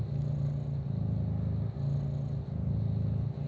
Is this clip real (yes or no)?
yes